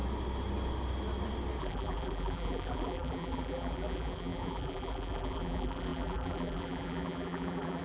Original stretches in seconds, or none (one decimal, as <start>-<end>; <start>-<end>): 0.0-1.6